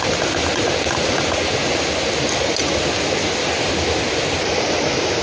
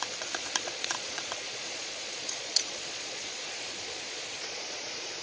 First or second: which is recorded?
first